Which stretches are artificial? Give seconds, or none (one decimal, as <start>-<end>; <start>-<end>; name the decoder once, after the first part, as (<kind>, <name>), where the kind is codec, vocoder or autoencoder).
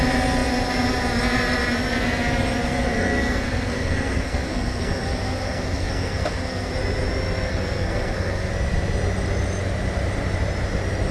2.6-6.7 (codec, SNAC); 7.5-8.5